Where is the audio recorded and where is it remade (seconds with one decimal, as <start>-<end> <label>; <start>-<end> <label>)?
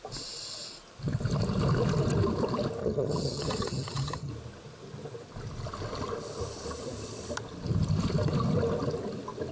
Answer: 0.0-2.8 recorded; 2.8-4.3 remade; 4.3-9.5 recorded